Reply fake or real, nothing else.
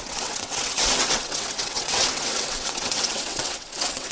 fake